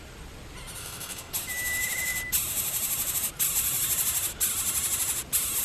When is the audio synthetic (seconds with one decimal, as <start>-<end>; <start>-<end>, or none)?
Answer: 0.8-1.3